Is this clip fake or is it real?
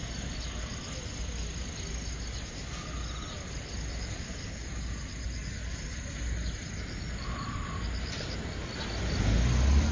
real